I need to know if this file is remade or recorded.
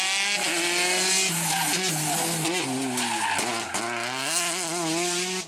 recorded